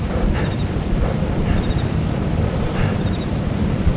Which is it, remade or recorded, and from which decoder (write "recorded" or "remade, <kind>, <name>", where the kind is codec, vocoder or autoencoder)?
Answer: remade, vocoder, BigVGAN v2